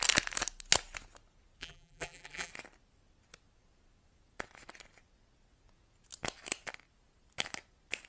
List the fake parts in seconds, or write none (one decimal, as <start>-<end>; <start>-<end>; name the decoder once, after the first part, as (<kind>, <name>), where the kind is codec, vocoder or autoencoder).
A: 1.6-2.5 (vocoder, BigVGAN v2)